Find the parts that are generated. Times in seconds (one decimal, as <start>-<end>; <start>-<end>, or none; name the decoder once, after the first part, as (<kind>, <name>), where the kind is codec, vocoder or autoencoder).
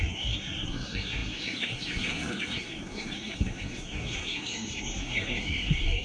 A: 0.0-6.0 (codec, SNAC)